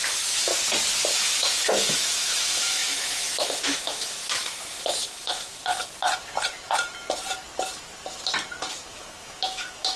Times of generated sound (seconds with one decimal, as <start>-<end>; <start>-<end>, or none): 0.0-0.5; 1.1-5.7; 8.7-10.0